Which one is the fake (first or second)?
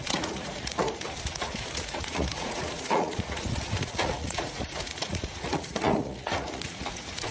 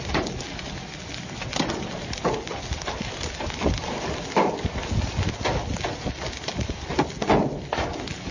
first